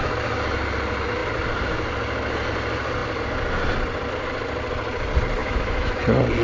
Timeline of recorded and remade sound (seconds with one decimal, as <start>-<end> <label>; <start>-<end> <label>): 0.0-5.4 recorded; 5.4-6.0 remade; 6.0-6.4 recorded